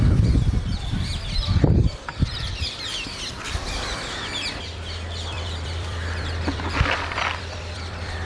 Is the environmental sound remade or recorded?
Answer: remade